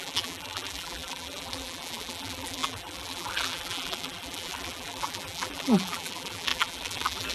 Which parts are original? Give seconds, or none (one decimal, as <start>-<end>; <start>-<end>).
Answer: none